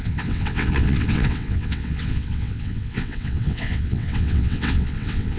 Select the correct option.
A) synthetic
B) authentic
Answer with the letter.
A